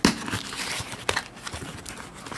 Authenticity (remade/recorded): recorded